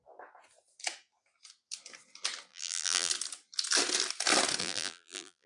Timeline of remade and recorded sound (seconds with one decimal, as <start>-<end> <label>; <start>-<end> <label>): 0.0-2.5 recorded; 2.5-3.1 remade; 3.1-4.6 recorded; 4.6-5.5 remade